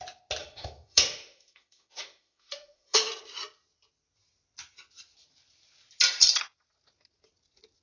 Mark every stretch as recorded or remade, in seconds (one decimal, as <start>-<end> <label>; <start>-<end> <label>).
0.0-0.4 recorded; 0.4-3.1 remade; 3.1-7.8 recorded